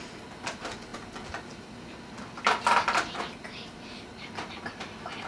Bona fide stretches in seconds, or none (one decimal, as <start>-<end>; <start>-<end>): 0.0-5.3